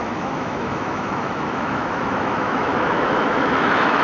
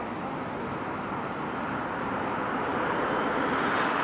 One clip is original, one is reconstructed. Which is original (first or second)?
second